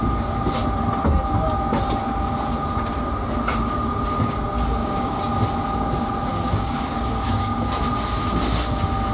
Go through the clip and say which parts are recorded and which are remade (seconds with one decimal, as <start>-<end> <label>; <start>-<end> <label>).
0.0-4.8 recorded; 4.8-5.3 remade; 5.3-6.3 recorded; 6.3-7.7 remade; 7.7-9.1 recorded